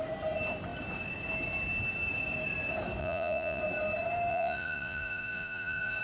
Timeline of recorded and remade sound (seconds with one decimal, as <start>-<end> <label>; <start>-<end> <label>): 0.0-3.0 recorded; 3.0-3.6 remade; 3.6-4.3 recorded; 4.3-6.0 remade